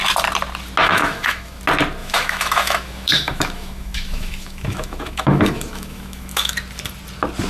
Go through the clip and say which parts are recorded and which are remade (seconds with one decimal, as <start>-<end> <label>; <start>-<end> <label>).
0.0-0.8 recorded; 0.8-1.6 remade; 1.6-2.0 recorded; 2.0-6.5 remade; 6.5-7.5 recorded